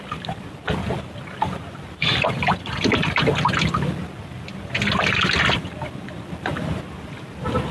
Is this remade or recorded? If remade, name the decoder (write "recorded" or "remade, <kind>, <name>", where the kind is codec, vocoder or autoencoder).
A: recorded